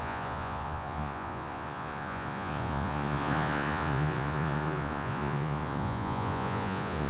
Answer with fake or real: fake